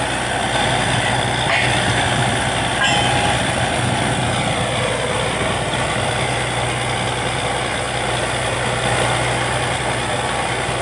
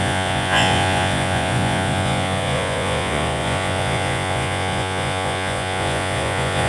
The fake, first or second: second